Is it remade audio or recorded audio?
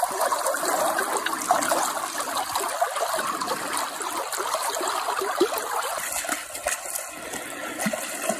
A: recorded